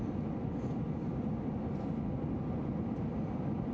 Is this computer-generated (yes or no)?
no